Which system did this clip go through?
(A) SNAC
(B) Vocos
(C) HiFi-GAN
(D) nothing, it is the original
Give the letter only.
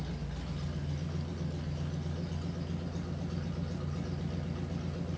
D